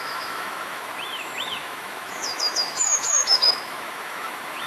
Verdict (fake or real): fake